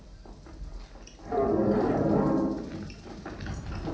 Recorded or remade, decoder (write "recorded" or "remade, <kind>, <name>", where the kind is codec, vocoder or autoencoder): recorded